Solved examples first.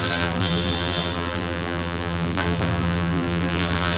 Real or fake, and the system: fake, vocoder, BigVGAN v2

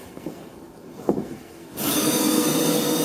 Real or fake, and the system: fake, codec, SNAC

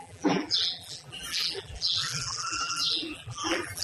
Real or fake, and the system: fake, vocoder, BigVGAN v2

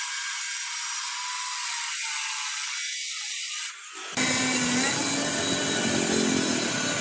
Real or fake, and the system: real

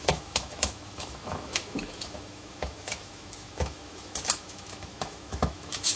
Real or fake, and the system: fake, autoencoder, DAC-VAE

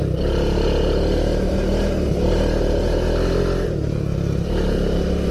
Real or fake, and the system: real